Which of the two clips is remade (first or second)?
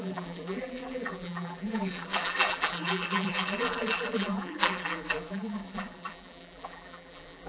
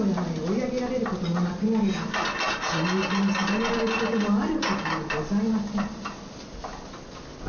first